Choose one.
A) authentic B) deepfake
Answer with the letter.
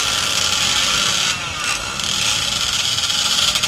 A